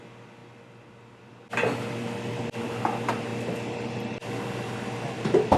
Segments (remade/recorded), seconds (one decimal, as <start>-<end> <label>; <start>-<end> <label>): 0.0-5.6 recorded